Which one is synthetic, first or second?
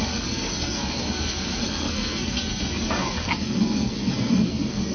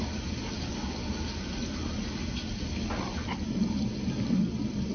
first